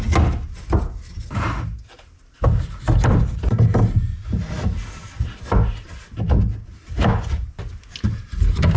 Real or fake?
real